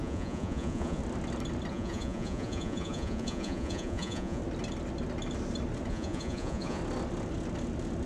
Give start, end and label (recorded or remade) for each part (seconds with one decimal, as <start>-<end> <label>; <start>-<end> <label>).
0.0-1.0 remade; 1.0-1.7 recorded; 1.7-4.4 remade; 4.4-5.9 recorded; 5.9-6.8 remade; 6.8-8.1 recorded